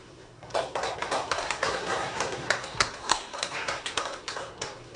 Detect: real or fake fake